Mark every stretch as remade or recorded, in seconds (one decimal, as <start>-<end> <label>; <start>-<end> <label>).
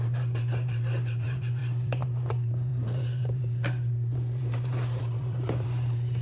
0.0-6.2 remade